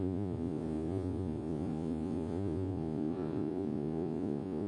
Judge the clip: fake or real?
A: fake